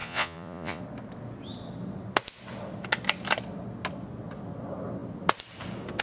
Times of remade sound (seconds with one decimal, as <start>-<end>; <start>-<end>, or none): 0.0-0.8